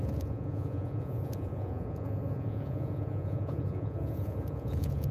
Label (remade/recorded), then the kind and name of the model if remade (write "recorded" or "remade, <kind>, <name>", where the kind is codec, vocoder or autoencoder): remade, vocoder, Vocos